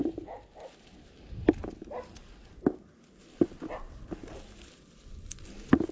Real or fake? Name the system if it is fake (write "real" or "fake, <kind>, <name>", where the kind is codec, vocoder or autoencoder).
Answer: real